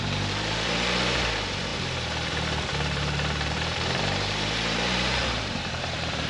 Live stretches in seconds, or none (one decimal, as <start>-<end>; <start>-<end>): none